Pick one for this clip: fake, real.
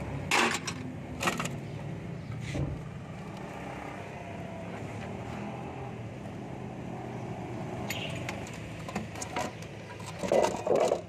real